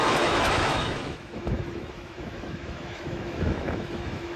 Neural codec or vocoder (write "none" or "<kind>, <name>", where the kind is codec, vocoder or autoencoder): autoencoder, DAC-VAE